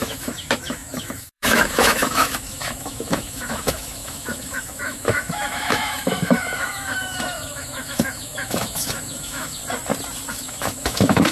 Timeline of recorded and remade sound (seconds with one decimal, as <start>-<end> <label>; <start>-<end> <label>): 0.0-9.6 remade; 9.6-10.3 recorded; 10.3-11.3 remade